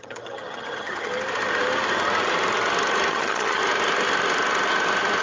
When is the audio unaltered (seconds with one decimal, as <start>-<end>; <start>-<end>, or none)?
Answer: 1.1-3.1; 3.6-5.2